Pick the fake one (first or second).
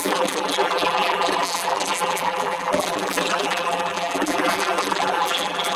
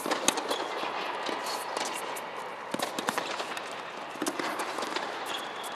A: first